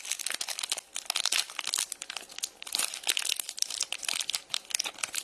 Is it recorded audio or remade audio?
recorded